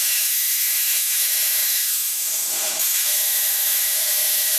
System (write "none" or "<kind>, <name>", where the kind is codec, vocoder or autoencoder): autoencoder, DAC-VAE